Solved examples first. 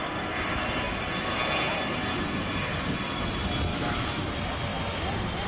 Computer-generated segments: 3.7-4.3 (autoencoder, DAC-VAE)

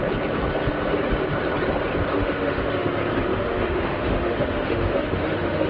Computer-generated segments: 2.1-2.9 (autoencoder, DAC-VAE); 3.3-5.7

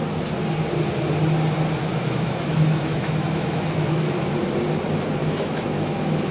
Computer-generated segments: 1.9-4.3 (autoencoder, DAC-VAE); 5.2-6.3